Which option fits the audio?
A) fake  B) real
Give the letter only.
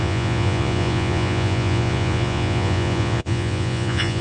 A